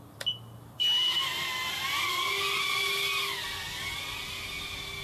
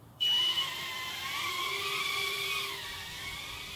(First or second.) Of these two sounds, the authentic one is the first